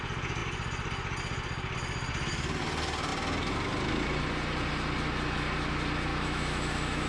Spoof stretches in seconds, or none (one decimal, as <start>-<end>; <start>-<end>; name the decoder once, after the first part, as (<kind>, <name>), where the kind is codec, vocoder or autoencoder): 6.1-7.1 (autoencoder, DAC-VAE)